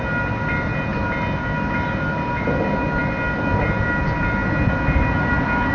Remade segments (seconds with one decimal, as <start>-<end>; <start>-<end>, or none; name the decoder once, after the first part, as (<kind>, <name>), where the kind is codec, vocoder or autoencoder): none